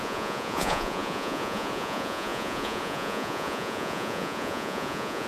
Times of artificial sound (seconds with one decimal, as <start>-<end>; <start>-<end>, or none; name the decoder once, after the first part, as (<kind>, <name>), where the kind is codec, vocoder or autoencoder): 0.0-5.3 (vocoder, Vocos)